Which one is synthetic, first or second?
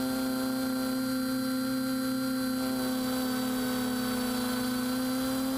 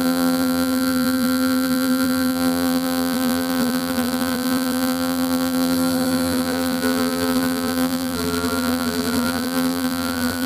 second